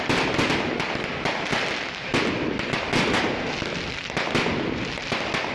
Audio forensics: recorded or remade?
recorded